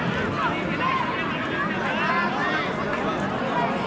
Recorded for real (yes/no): yes